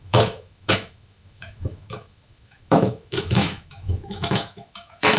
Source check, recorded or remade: remade